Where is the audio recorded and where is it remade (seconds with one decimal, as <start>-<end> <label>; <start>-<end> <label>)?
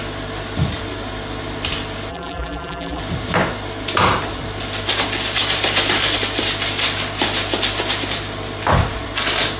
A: 0.0-2.1 recorded; 2.1-3.0 remade; 3.0-9.6 recorded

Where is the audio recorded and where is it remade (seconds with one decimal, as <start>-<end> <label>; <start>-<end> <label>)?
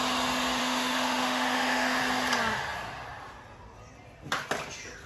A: 0.0-0.6 recorded; 0.6-2.0 remade; 2.0-5.1 recorded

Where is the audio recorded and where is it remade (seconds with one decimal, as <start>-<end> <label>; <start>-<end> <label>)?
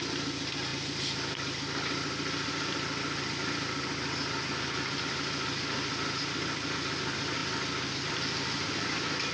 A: 0.0-0.7 recorded; 0.7-5.0 remade; 5.0-7.4 recorded; 7.4-8.1 remade; 8.1-9.3 recorded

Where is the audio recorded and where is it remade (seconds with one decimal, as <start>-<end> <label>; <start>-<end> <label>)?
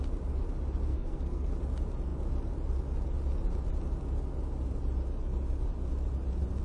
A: 0.0-0.9 recorded; 0.9-1.5 remade; 1.5-6.6 recorded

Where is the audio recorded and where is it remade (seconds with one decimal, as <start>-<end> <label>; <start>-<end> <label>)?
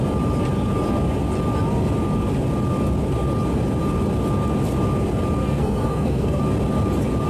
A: 0.0-5.4 recorded; 5.4-6.4 remade; 6.4-7.3 recorded